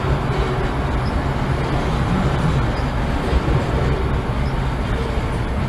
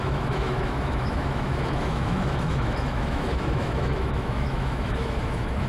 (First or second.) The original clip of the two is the first